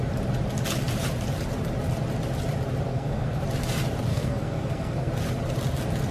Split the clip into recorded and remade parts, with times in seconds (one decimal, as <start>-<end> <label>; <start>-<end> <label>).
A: 0.0-2.9 recorded; 2.9-3.4 remade; 3.4-4.1 recorded; 4.1-5.1 remade; 5.1-6.1 recorded